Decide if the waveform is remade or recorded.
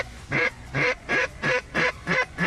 remade